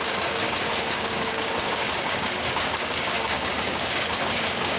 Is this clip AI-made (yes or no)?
yes